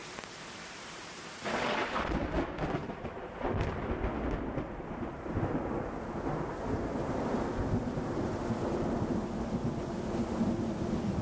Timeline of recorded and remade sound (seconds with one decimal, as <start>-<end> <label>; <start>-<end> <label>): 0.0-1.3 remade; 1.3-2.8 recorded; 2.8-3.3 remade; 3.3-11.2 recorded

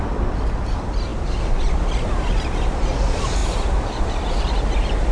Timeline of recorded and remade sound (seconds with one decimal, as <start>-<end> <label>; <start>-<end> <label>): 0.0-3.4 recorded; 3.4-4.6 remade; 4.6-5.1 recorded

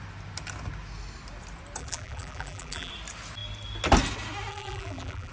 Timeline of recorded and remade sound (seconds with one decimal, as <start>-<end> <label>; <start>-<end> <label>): 0.0-1.8 recorded; 1.8-2.9 remade; 2.9-4.5 recorded; 4.5-5.3 remade

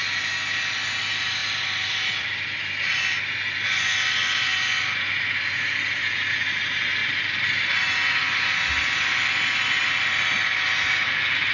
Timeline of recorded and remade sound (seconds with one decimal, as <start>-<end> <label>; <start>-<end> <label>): 0.0-1.4 recorded; 1.4-2.5 remade; 2.5-7.0 recorded; 7.0-7.7 remade; 7.7-11.5 recorded